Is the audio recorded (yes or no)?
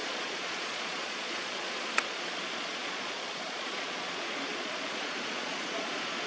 no